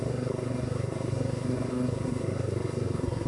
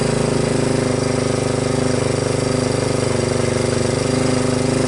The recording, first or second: second